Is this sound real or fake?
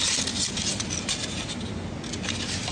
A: real